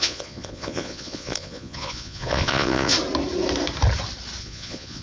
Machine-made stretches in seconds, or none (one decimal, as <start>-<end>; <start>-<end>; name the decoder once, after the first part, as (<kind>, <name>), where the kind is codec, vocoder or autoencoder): 0.0-2.9 (vocoder, Vocos); 4.4-5.0